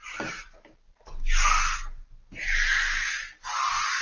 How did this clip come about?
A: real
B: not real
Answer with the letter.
A